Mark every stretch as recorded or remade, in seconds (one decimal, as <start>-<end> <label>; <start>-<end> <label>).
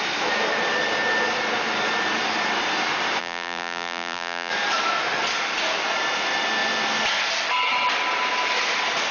0.0-3.2 recorded; 3.2-4.5 remade; 4.5-9.1 recorded